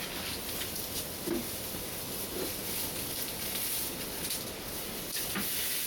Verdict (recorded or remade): recorded